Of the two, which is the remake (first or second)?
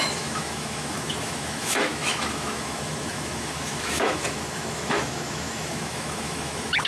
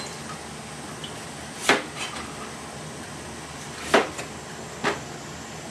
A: first